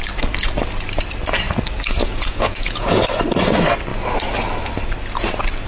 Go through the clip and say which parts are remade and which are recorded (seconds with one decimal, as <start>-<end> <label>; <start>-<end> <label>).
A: 0.0-2.0 recorded; 2.0-3.0 remade; 3.0-5.7 recorded